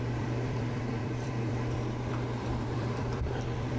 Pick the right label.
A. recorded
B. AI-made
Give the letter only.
B